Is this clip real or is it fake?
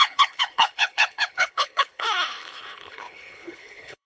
fake